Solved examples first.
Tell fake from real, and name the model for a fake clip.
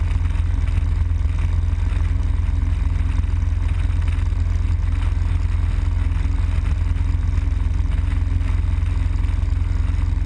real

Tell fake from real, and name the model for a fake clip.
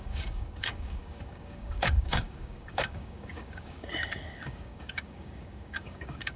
fake, codec, DAC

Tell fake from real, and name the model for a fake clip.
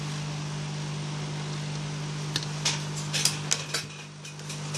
real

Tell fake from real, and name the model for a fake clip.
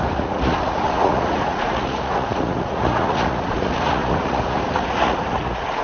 fake, vocoder, Vocos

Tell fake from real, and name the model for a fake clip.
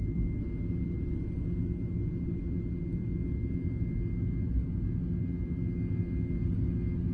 real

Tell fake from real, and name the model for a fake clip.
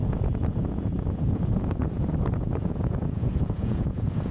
fake, vocoder, Vocos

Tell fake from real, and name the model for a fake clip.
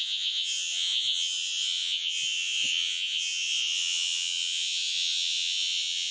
fake, vocoder, Vocos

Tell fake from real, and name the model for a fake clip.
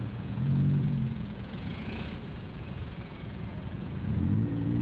fake, vocoder, Vocos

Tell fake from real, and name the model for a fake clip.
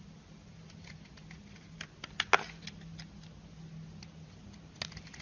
real